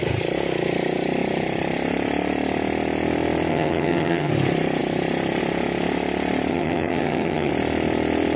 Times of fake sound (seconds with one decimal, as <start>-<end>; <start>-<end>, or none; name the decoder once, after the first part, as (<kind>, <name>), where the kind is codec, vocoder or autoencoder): 3.5-4.3 (vocoder, HiFi-GAN); 6.5-7.5